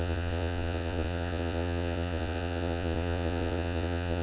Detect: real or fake fake